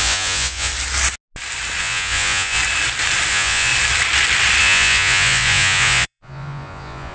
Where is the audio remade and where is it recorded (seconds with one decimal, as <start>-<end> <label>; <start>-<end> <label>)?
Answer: 0.0-0.7 remade; 0.7-1.8 recorded; 1.8-2.6 remade; 2.6-3.3 recorded; 3.3-3.7 remade; 3.7-4.6 recorded; 4.6-7.1 remade